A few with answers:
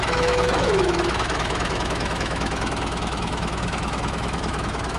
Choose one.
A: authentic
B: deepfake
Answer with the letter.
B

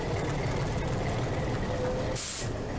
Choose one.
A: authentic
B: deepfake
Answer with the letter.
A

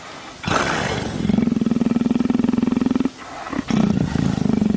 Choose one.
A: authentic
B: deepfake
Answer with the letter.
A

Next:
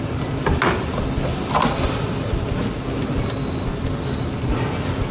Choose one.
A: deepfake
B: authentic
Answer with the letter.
B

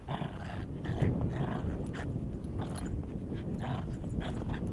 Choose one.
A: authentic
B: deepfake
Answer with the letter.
A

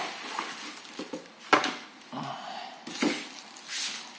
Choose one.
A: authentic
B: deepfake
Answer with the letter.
A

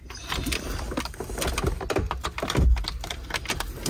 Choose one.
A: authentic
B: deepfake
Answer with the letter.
A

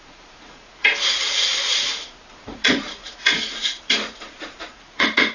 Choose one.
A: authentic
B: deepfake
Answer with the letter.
B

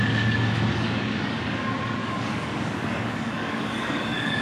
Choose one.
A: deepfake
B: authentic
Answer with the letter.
A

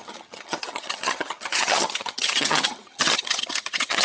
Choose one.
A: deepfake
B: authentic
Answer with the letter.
A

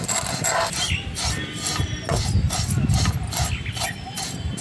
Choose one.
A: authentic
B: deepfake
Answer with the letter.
A